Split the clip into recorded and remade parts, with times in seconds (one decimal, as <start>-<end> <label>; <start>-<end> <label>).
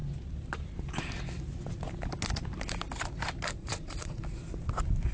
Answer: 0.0-3.6 recorded; 3.6-4.2 remade; 4.2-5.1 recorded